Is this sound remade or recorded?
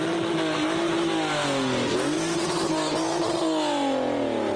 recorded